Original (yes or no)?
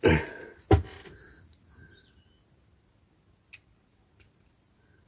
yes